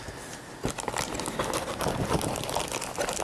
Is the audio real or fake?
real